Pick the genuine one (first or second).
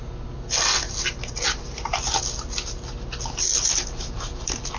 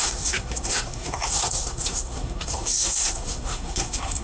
first